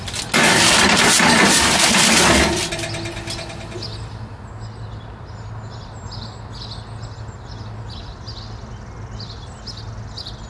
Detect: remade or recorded recorded